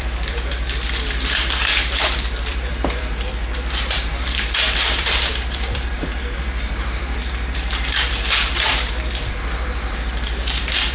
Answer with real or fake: fake